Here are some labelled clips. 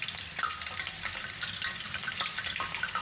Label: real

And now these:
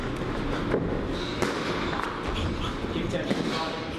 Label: real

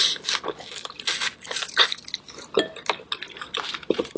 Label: real